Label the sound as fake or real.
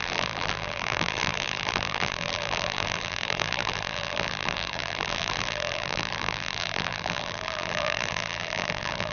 fake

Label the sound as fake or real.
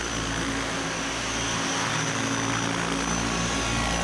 real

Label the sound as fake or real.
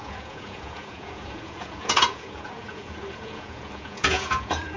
fake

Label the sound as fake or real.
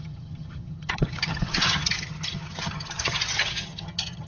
fake